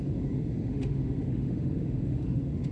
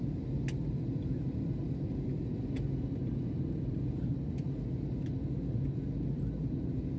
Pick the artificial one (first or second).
first